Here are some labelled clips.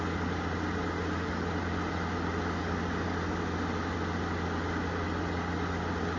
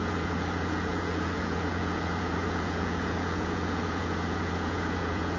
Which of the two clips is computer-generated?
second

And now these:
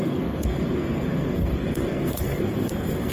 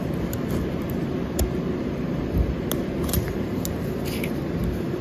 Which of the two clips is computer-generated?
first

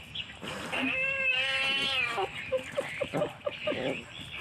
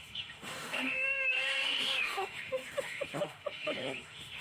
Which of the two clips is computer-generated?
second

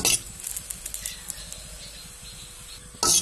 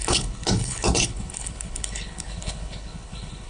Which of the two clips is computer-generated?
second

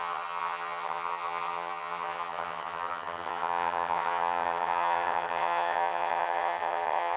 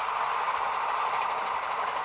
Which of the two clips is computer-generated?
first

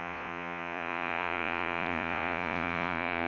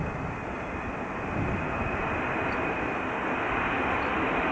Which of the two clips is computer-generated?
first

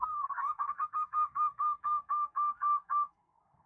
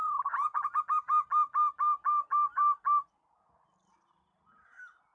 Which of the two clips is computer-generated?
first